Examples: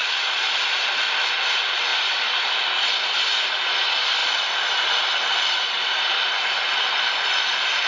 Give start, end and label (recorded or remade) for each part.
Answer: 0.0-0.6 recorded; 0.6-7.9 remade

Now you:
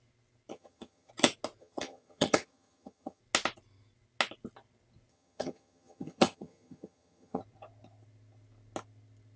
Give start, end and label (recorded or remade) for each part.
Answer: 0.0-0.5 recorded; 0.5-1.1 remade; 1.1-1.6 recorded; 1.6-3.2 remade; 3.2-5.1 recorded; 5.1-7.4 remade; 7.4-9.4 recorded

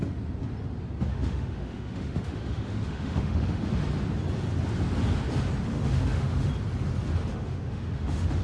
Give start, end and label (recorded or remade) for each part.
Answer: 0.0-1.1 recorded; 1.1-3.6 remade; 3.6-5.7 recorded; 5.7-6.5 remade; 6.5-7.3 recorded; 7.3-8.4 remade

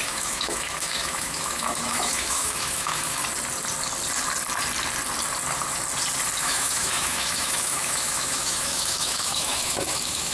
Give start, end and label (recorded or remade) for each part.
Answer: 0.0-3.2 remade; 3.2-6.4 recorded; 6.4-10.3 remade